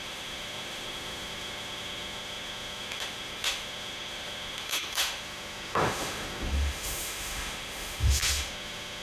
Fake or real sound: fake